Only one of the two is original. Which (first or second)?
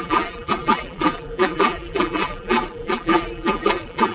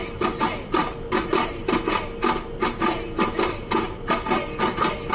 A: second